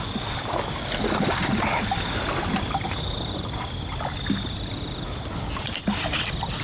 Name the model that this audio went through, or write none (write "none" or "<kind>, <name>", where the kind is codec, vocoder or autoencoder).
vocoder, BigVGAN v2